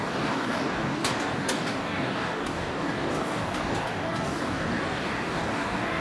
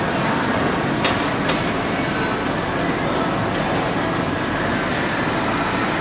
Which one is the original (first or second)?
second